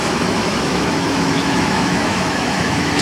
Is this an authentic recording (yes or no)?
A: no